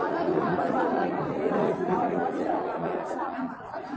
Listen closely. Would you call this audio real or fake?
fake